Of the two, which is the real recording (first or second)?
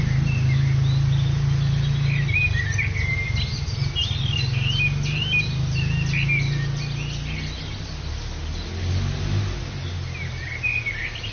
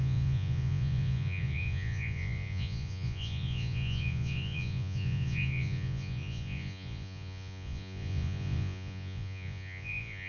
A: first